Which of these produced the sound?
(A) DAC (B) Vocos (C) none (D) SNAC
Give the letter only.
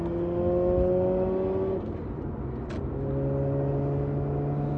C